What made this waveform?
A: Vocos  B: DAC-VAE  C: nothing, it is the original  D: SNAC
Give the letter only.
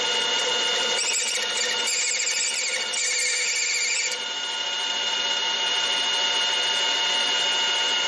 C